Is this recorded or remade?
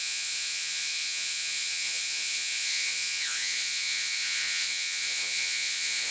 remade